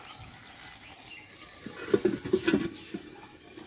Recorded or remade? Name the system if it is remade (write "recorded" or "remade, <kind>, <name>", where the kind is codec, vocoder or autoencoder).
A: recorded